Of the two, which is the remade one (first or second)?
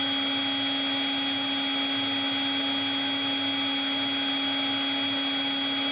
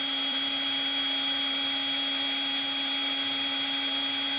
second